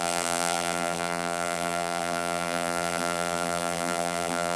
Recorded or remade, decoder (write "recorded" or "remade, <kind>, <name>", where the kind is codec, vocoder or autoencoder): remade, vocoder, BigVGAN v2